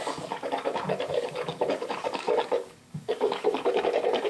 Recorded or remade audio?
remade